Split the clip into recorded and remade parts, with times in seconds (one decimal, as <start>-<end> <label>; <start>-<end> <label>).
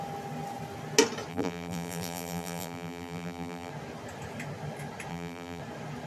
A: 0.0-1.3 recorded; 1.3-3.7 remade; 3.7-5.1 recorded; 5.1-5.6 remade; 5.6-6.1 recorded